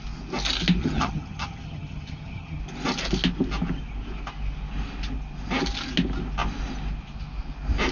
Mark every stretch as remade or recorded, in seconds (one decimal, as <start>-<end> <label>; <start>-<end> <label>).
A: 0.0-0.8 recorded; 0.8-2.6 remade; 2.6-7.9 recorded